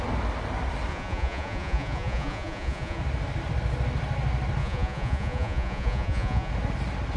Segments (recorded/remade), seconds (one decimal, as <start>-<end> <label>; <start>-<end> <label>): 0.0-0.9 recorded; 0.9-3.0 remade; 3.0-4.6 recorded; 4.6-6.5 remade; 6.5-7.2 recorded